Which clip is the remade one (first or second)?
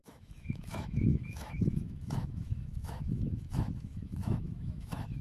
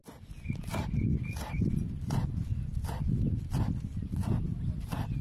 first